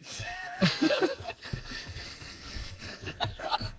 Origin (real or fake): fake